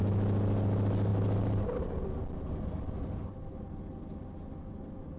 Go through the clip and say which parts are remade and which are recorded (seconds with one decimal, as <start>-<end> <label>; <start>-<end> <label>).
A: 0.0-5.2 recorded